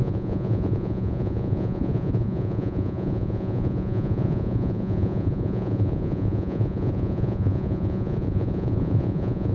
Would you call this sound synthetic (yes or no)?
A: yes